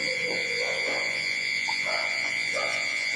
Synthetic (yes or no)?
yes